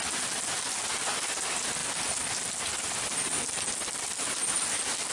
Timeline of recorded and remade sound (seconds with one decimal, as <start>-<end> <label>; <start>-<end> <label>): 0.0-5.1 recorded